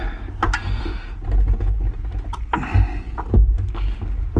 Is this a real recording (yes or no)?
yes